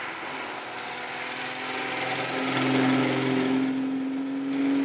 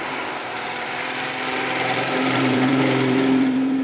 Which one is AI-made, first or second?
second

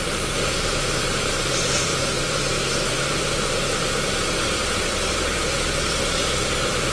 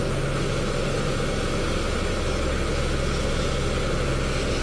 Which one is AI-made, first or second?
first